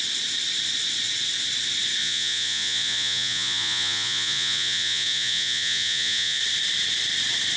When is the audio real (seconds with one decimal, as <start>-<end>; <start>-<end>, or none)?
0.0-2.0; 6.4-7.6